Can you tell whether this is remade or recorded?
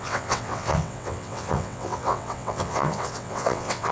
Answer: remade